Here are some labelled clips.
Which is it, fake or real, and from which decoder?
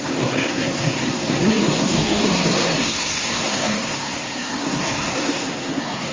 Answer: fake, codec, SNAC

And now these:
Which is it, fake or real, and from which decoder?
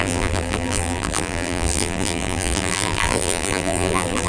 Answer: fake, vocoder, BigVGAN v2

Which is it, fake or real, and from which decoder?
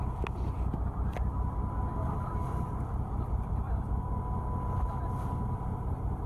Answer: real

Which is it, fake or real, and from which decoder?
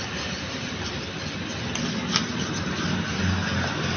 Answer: real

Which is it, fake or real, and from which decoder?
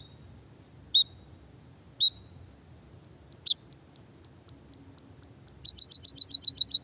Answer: real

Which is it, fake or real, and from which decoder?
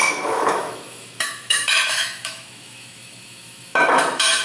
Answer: fake, autoencoder, DAC-VAE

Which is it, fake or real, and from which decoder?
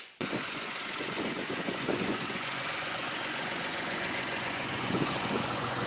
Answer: fake, vocoder, Vocos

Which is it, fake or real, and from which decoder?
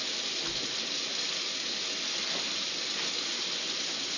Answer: real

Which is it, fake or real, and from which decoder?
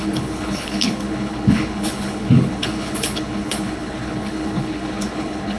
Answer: fake, codec, HILCodec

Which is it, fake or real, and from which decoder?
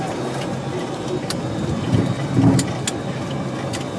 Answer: real